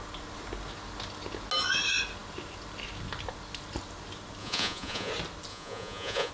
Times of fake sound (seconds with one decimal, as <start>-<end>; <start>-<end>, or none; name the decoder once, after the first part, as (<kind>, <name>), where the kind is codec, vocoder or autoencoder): 4.4-5.1 (vocoder, Vocos); 5.5-6.3

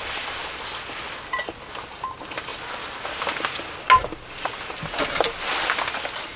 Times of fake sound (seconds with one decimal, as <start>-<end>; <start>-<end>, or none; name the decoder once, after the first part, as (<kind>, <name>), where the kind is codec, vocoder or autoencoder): none

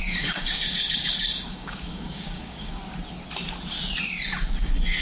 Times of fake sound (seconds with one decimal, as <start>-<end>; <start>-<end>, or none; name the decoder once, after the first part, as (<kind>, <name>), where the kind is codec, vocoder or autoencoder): 0.0-2.8 (codec, DAC); 4.6-5.0

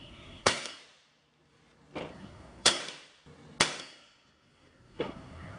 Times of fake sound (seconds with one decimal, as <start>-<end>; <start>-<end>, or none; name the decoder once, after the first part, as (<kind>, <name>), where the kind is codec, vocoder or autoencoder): 0.0-0.8 (codec, SNAC); 2.1-2.8; 3.8-5.6

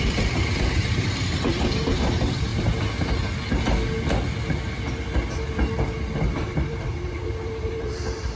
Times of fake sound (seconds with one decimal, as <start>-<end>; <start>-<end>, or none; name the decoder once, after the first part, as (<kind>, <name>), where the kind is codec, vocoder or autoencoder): 0.0-2.5 (vocoder, BigVGAN v2); 6.2-8.4

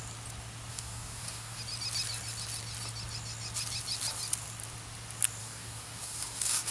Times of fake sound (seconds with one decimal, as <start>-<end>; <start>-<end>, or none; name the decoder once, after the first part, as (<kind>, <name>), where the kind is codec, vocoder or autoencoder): 0.7-1.6 (codec, DAC); 5.4-6.7

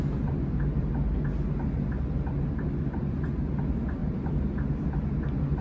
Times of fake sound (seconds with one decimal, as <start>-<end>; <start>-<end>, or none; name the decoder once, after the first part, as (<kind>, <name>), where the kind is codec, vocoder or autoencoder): none

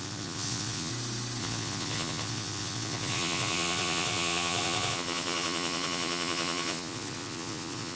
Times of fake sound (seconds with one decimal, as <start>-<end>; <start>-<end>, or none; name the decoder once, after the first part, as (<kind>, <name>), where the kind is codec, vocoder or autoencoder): 0.0-0.9 (vocoder, Vocos); 1.4-8.0